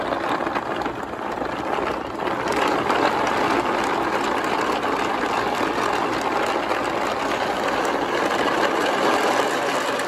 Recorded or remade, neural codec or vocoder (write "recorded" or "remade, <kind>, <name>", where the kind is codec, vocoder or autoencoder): recorded